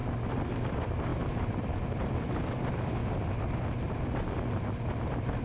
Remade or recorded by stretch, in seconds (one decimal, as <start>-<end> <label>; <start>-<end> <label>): 0.0-0.5 recorded; 0.5-3.0 remade; 3.0-4.6 recorded; 4.6-5.4 remade